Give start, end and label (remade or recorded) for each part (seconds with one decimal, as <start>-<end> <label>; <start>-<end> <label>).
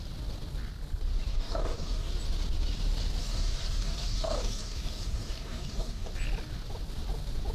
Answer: 0.0-1.3 recorded; 1.3-2.1 remade; 2.1-3.2 recorded; 3.2-6.1 remade; 6.1-7.5 recorded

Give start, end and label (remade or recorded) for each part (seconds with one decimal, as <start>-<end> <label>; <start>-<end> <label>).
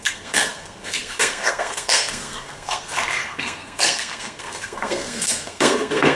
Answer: 0.0-6.2 remade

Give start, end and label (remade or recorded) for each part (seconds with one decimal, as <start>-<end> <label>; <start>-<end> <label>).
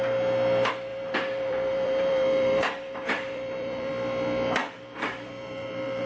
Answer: 0.0-0.9 recorded; 0.9-3.9 remade; 3.9-4.6 recorded; 4.6-6.1 remade